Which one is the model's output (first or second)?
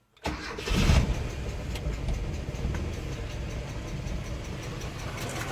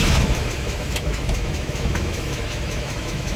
second